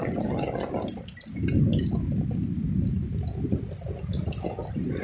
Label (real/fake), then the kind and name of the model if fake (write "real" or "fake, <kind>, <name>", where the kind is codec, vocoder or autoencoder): real